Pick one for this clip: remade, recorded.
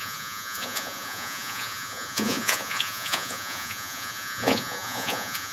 remade